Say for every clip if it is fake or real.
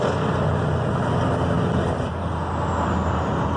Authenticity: real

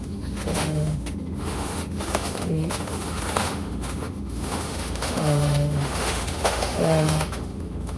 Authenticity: fake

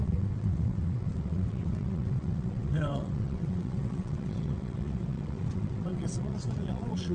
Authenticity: fake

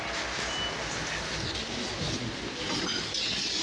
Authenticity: real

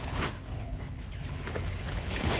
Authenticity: fake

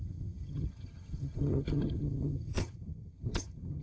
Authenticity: fake